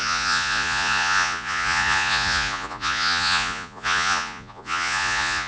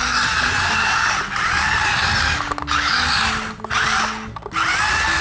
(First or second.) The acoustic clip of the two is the second